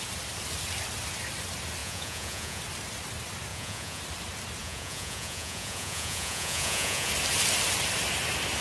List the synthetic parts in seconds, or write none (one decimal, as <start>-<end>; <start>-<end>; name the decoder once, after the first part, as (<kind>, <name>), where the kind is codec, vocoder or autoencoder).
1.8-2.6 (vocoder, Vocos); 3.5-4.0; 4.6-7.1